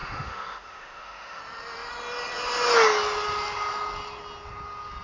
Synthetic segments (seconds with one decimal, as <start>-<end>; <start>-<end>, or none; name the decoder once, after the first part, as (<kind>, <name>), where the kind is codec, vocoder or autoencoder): 0.0-1.4 (autoencoder, DAC-VAE)